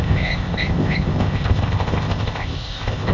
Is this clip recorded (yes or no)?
no